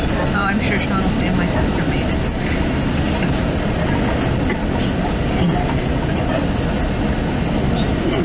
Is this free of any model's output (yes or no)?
yes